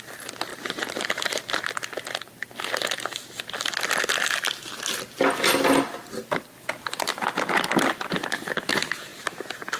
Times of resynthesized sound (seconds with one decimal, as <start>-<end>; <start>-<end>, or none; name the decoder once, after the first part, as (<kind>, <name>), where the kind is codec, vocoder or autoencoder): 0.5-1.4 (vocoder, BigVGAN v2)